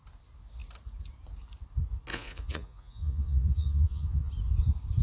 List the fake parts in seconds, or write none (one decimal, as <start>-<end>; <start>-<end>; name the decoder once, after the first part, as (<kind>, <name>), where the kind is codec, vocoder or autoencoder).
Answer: 2.1-4.3 (vocoder, Vocos)